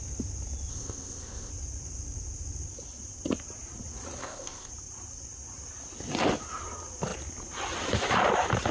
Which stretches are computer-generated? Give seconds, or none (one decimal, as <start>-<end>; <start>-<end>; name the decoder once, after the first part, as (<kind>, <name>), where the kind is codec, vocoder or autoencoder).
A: 0.7-1.5 (codec, ZipCodec); 4.2-4.7